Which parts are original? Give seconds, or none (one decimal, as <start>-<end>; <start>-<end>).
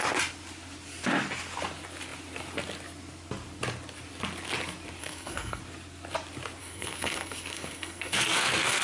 0.0-5.0; 5.6-6.6